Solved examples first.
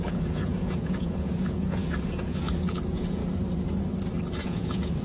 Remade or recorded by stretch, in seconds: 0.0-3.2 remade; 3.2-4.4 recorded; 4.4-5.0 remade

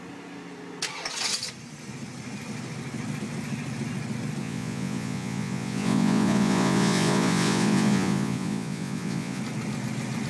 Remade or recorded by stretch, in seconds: 0.0-4.4 recorded; 4.4-9.4 remade; 9.4-10.3 recorded

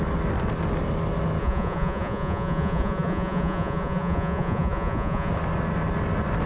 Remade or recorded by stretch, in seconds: 0.0-1.4 recorded; 1.4-5.3 remade; 5.3-6.5 recorded

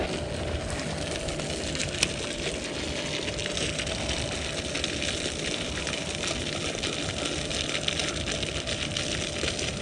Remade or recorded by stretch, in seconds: 0.0-9.8 recorded

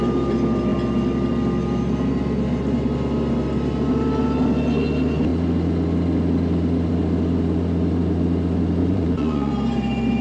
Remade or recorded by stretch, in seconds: 0.0-8.8 recorded; 8.8-9.5 remade; 9.5-10.2 recorded

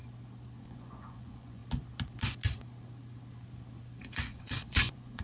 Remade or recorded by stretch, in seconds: 0.0-0.6 recorded; 0.6-1.6 remade; 1.6-4.0 recorded; 4.0-5.2 remade

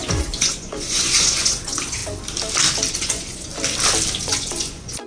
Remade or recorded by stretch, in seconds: 0.0-2.0 remade; 2.0-2.9 recorded; 2.9-3.5 remade; 3.5-4.2 recorded; 4.2-5.1 remade